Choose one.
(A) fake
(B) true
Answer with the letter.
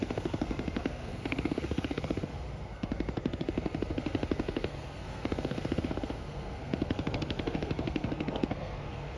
A